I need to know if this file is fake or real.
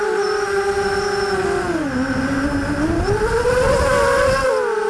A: real